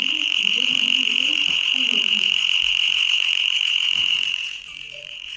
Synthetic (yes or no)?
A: yes